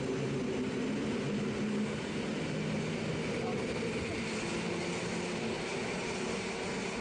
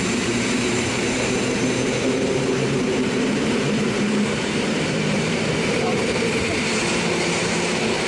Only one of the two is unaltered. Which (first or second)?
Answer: first